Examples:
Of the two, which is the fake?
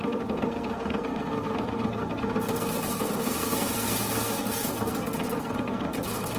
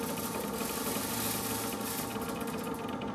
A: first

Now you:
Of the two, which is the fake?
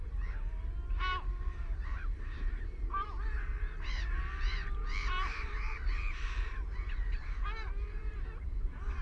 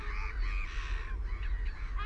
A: first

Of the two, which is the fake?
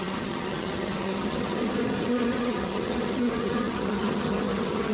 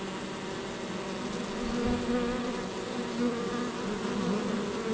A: first